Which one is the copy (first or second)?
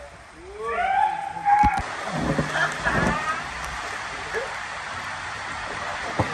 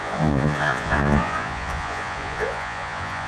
second